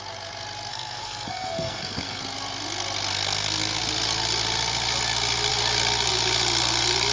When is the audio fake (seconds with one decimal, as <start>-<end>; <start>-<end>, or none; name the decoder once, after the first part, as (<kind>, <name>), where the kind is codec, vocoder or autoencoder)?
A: 0.7-2.2 (codec, SNAC); 3.1-3.8